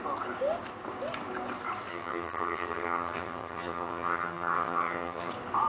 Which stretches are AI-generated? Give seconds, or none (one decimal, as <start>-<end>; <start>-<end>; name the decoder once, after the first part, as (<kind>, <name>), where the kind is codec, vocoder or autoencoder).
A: 1.9-5.3 (vocoder, HiFi-GAN)